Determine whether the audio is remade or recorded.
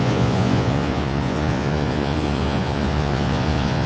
remade